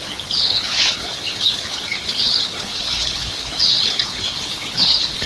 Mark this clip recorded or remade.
remade